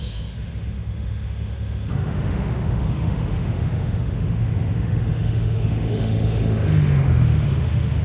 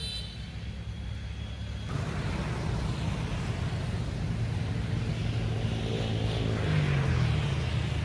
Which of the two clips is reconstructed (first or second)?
first